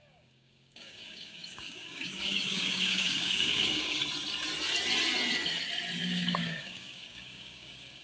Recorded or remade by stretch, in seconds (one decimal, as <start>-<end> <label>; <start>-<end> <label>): 0.0-4.0 remade; 4.0-6.0 recorded; 6.0-8.0 remade